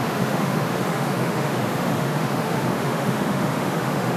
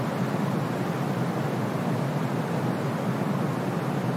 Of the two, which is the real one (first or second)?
second